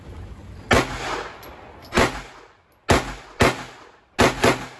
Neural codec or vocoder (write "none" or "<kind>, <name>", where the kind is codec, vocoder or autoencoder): none